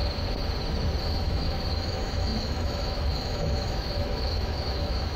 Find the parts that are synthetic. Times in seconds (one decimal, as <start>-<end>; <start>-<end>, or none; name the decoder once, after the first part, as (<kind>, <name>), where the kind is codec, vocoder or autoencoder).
1.0-5.2 (autoencoder, DAC-VAE)